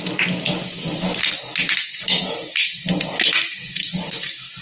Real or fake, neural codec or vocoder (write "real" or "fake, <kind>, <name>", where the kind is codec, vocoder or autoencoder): real